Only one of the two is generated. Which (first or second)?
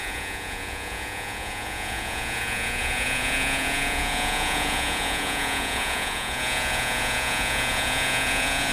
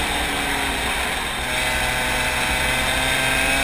first